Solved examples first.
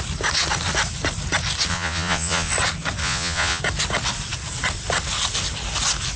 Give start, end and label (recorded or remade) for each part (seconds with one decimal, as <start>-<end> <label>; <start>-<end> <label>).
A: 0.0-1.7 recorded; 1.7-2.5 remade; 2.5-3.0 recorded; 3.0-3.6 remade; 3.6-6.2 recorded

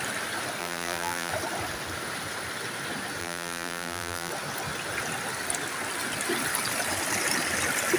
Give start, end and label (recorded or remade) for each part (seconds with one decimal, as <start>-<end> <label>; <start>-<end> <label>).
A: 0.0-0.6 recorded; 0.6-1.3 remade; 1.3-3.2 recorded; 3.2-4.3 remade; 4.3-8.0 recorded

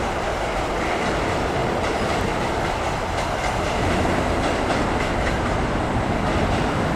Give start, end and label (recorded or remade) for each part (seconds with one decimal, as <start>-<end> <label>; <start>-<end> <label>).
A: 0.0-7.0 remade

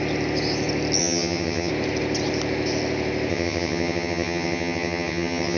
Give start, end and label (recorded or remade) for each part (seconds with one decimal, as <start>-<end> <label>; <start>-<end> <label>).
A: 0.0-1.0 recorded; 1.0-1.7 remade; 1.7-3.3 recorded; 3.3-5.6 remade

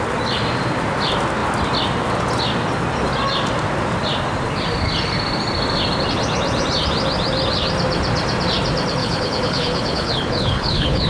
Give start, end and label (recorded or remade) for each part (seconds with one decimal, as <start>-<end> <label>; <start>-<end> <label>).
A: 0.0-9.0 recorded; 9.0-11.1 remade